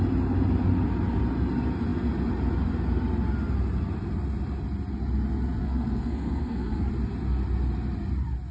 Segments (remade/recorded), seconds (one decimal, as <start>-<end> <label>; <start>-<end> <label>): 0.0-5.6 recorded; 5.6-6.9 remade; 6.9-8.5 recorded